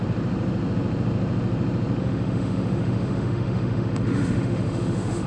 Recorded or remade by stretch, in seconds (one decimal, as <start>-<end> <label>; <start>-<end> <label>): 0.0-2.0 recorded; 2.0-5.3 remade